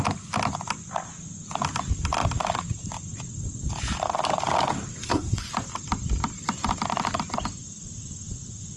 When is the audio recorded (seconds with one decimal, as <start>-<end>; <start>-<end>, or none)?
0.0-5.0; 5.5-8.8